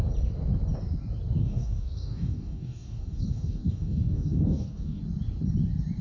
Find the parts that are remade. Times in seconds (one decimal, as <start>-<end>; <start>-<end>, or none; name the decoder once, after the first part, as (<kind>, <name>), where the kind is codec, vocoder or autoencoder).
1.4-5.0 (codec, DAC)